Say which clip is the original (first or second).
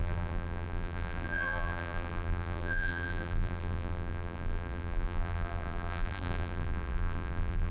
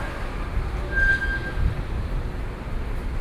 second